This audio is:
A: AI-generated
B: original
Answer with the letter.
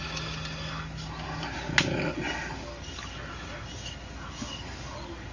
B